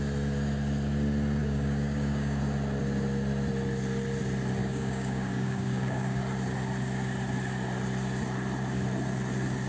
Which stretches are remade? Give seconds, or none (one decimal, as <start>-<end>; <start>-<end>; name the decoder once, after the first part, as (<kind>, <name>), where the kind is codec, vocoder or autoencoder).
1.4-2.4 (codec, DAC); 4.6-6.2